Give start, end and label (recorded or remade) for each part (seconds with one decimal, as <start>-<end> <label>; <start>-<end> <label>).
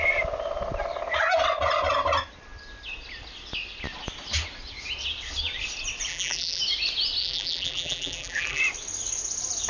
0.0-6.1 recorded; 6.1-6.6 remade; 6.6-7.2 recorded; 7.2-8.6 remade; 8.6-9.7 recorded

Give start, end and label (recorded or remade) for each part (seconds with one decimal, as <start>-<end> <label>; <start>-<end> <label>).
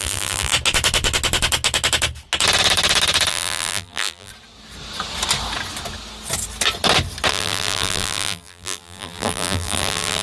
0.0-0.5 remade; 0.5-3.3 recorded; 3.3-4.3 remade; 4.3-7.3 recorded; 7.3-10.2 remade